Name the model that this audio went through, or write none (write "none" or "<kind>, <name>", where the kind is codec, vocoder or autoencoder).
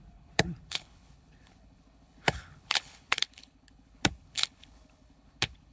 codec, HILCodec